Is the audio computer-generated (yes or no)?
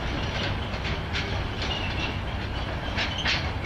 no